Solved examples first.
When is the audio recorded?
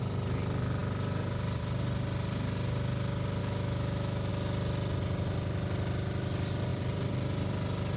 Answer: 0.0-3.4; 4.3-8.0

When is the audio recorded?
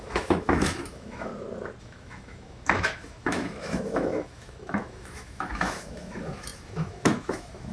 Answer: 1.3-1.8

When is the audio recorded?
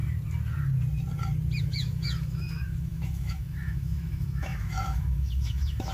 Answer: 0.0-1.6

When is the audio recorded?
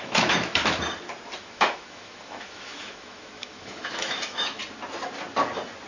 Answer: 0.6-1.4; 4.6-5.9